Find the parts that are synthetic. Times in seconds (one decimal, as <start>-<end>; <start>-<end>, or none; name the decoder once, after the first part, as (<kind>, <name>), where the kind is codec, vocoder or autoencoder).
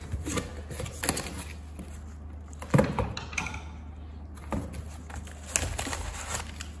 none